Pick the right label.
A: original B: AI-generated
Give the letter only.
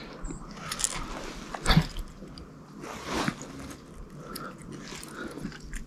A